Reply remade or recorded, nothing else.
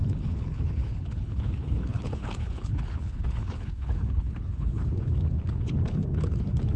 remade